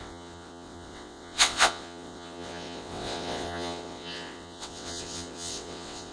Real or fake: fake